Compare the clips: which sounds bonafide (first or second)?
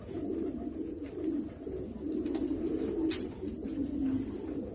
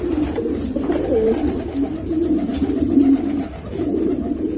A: first